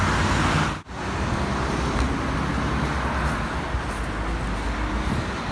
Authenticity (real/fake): real